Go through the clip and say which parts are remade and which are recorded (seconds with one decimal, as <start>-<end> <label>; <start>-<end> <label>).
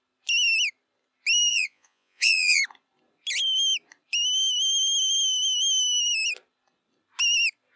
0.0-1.5 recorded; 1.5-2.6 remade; 2.6-7.8 recorded